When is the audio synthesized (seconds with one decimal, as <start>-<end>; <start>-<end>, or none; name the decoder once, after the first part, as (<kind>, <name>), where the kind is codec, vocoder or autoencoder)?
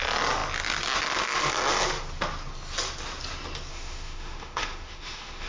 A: 3.7-5.5 (autoencoder, DAC-VAE)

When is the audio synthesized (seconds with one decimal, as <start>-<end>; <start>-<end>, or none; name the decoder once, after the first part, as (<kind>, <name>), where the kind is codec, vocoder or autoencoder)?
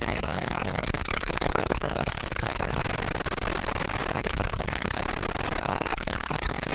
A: 0.0-2.8 (codec, SNAC); 4.1-5.0; 5.6-6.7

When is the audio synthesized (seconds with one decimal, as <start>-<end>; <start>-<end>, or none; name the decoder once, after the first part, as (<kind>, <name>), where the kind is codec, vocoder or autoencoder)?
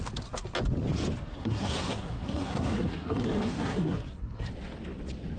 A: 1.3-4.5 (codec, SNAC)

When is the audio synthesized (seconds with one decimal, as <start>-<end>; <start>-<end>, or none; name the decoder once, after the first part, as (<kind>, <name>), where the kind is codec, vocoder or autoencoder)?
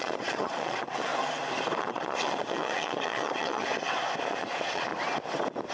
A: 0.0-1.1 (vocoder, Vocos); 1.8-3.7; 4.3-4.9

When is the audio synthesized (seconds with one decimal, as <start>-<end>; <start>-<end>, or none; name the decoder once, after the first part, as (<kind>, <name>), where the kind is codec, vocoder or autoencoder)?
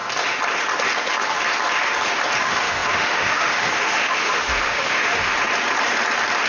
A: 2.4-5.3 (autoencoder, DAC-VAE)